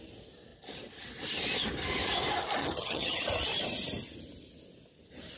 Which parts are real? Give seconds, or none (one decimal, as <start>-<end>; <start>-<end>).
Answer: 0.0-2.6; 3.2-5.4